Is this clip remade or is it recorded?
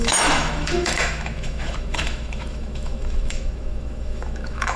remade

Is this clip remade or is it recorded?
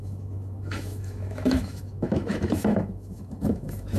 remade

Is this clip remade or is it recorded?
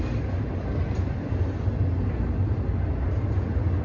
recorded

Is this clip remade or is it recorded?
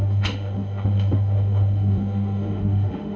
remade